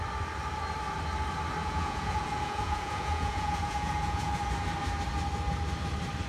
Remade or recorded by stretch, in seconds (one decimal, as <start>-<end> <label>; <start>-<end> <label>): 0.0-1.6 recorded; 1.6-4.3 remade; 4.3-6.3 recorded